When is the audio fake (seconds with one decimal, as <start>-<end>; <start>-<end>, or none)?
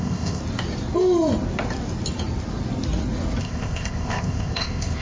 0.0-0.4; 3.4-5.0